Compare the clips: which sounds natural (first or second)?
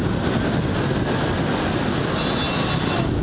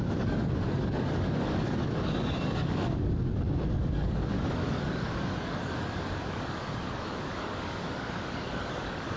first